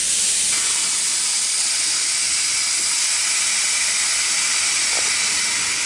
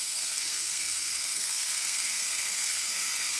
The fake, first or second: second